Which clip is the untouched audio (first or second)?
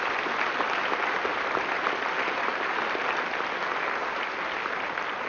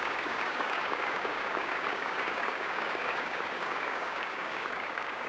first